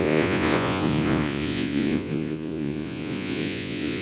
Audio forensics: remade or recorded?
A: remade